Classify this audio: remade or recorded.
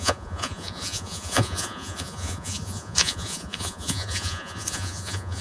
remade